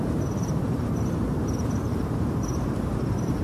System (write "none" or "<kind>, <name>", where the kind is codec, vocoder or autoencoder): vocoder, BigVGAN v2